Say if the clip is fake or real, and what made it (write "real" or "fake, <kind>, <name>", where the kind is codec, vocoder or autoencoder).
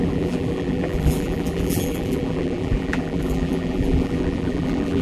fake, vocoder, BigVGAN v2